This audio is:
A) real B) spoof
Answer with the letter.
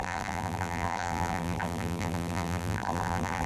B